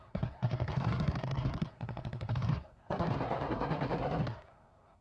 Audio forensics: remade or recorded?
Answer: remade